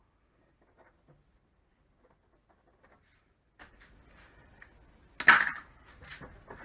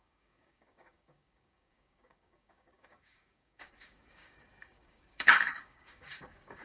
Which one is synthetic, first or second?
second